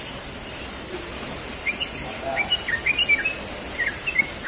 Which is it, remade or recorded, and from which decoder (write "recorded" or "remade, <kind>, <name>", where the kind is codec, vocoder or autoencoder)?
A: recorded